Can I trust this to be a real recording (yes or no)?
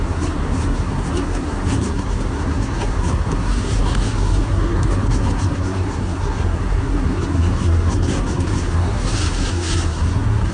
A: no